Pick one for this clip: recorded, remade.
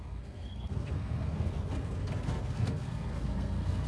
remade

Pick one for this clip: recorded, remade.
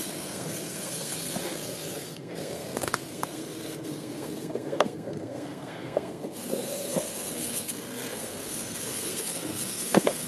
remade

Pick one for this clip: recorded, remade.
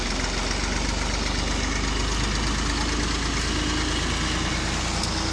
recorded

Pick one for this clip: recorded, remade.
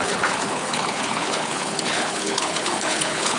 remade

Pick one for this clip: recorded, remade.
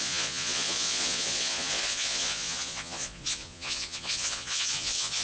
remade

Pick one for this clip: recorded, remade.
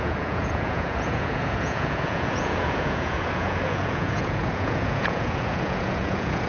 remade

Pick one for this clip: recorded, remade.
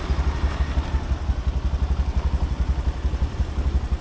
recorded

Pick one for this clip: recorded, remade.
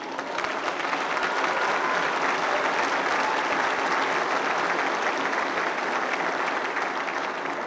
recorded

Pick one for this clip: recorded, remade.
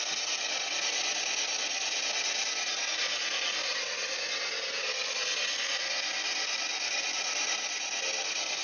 recorded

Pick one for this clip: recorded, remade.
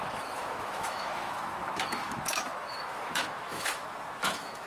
remade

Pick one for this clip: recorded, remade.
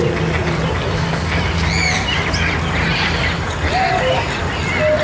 recorded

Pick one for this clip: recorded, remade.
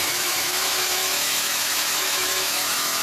remade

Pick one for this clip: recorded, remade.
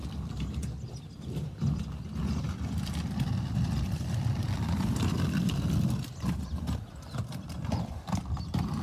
remade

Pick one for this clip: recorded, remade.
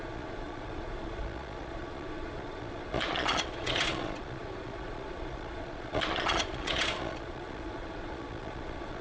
remade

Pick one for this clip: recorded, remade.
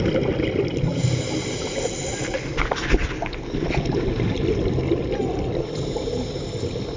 recorded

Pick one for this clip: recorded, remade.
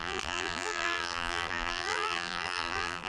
remade